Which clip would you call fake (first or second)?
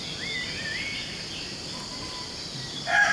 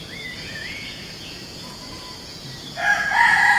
second